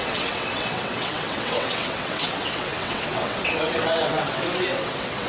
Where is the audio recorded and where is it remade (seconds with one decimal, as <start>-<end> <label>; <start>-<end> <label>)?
0.0-5.3 remade

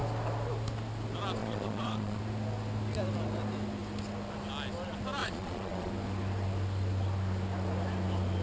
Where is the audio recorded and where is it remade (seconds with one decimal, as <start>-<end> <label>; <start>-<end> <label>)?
0.0-1.4 recorded; 1.4-2.2 remade; 2.2-5.2 recorded; 5.2-5.9 remade; 5.9-8.4 recorded

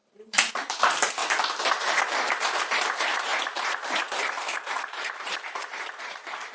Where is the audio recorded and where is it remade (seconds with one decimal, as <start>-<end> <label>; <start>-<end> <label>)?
0.0-1.2 remade; 1.2-1.7 recorded; 1.7-6.5 remade

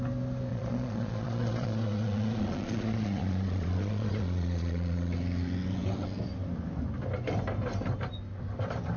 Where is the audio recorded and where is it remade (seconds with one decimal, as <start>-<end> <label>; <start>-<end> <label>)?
0.0-0.5 recorded; 0.5-5.1 remade; 5.1-9.0 recorded

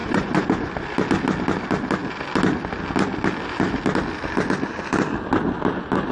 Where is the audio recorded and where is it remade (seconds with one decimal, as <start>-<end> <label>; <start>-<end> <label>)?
0.0-0.7 remade; 0.7-6.1 recorded

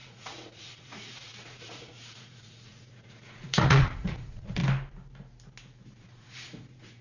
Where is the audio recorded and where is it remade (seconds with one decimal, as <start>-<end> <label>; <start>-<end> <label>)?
0.0-4.6 remade; 4.6-6.0 recorded; 6.0-7.0 remade